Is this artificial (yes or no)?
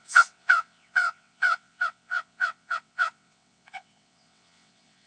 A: yes